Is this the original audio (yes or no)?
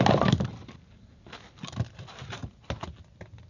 yes